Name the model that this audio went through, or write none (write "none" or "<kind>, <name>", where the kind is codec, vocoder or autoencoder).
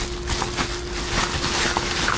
none